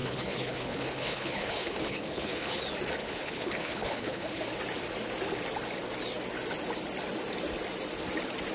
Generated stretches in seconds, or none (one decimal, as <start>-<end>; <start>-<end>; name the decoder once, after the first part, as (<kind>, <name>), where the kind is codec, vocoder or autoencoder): 0.0-2.6 (codec, HILCodec); 3.0-4.4